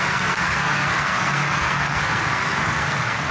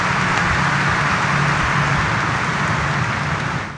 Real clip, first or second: second